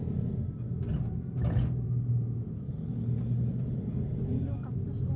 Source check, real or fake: real